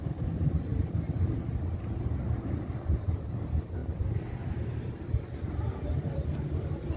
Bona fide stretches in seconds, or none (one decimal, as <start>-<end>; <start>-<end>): 0.7-2.6